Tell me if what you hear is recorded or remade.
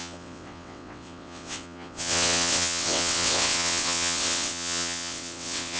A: remade